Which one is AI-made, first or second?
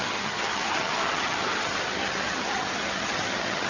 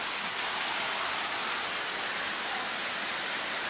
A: first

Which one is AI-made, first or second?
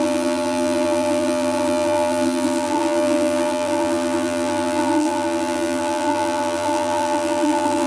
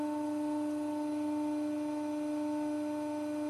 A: first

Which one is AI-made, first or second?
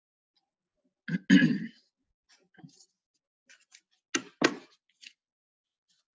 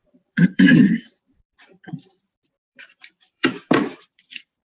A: second